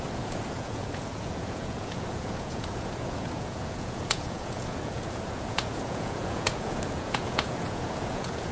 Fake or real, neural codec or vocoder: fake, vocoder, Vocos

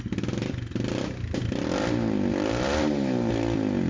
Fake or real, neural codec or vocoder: real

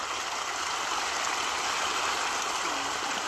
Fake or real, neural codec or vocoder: real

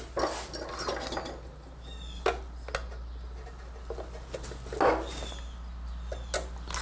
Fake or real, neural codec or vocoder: real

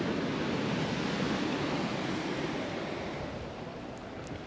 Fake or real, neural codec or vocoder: real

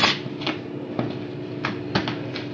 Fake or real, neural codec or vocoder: real